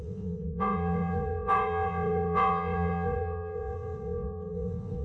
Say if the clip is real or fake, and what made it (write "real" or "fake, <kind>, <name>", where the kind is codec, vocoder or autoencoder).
fake, vocoder, WaveNeXt